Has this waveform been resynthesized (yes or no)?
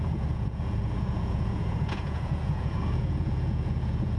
yes